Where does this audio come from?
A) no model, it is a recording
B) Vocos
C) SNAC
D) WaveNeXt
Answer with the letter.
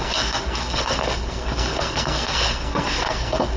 C